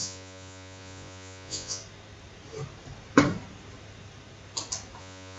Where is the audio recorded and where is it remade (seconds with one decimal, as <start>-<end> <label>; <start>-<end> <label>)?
0.0-1.8 remade; 1.8-5.0 recorded; 5.0-5.4 remade